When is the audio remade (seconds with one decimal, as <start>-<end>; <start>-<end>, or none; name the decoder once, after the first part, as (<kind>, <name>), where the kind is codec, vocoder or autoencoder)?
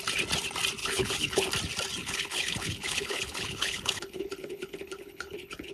0.8-1.5 (codec, HILCodec); 2.0-5.7